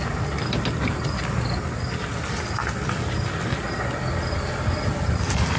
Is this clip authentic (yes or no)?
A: yes